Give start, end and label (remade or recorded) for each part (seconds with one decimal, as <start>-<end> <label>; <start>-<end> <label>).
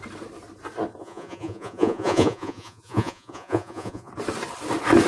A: 0.0-1.0 recorded; 1.0-4.1 remade; 4.1-5.1 recorded